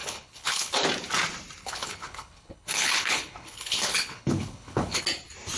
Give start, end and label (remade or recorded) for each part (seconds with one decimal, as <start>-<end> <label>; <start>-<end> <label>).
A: 0.0-0.7 remade; 0.7-1.6 recorded; 1.6-5.0 remade; 5.0-5.6 recorded